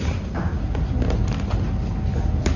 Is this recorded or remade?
recorded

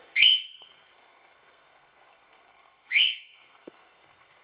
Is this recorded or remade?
remade